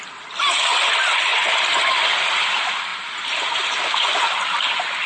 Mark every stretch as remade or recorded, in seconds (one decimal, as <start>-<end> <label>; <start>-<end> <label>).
0.0-1.3 recorded; 1.3-2.1 remade; 2.1-2.9 recorded; 2.9-3.8 remade; 3.8-5.1 recorded